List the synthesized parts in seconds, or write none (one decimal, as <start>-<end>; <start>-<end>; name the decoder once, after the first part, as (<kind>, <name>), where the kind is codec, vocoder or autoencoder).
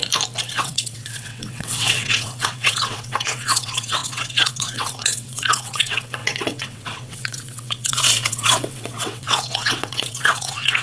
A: 0.5-10.8 (vocoder, WaveNeXt)